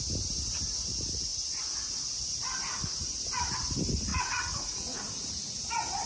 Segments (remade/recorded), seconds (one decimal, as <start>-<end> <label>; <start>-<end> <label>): 0.0-4.1 recorded; 4.1-5.0 remade; 5.0-6.1 recorded